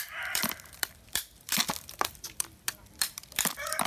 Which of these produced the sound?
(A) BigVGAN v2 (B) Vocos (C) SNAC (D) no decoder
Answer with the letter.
A